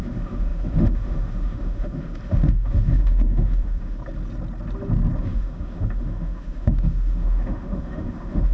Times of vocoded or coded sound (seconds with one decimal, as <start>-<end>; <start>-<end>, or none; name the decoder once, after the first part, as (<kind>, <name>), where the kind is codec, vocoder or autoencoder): 0.0-4.0 (autoencoder, DAC-VAE); 5.2-8.5